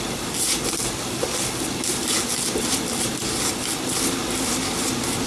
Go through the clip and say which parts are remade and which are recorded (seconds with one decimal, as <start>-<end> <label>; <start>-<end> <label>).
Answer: 0.0-5.3 recorded